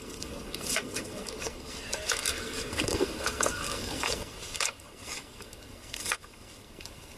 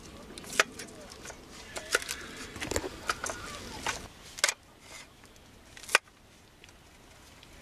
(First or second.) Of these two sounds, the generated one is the first